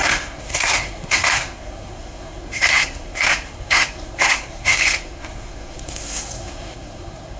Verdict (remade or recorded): remade